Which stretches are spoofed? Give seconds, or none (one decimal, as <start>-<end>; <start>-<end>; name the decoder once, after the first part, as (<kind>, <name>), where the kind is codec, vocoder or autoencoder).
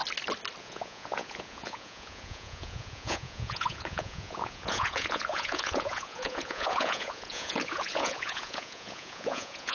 0.6-9.7 (vocoder, Vocos)